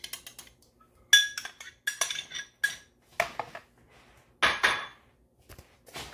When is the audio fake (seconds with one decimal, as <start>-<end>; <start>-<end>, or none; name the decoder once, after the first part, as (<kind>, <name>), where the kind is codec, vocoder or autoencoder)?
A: none